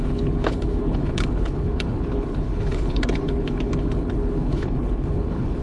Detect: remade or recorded remade